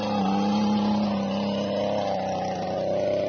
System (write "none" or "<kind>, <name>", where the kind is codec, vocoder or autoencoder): none